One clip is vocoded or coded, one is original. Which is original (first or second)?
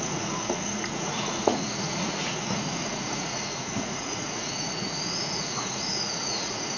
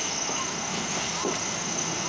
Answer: second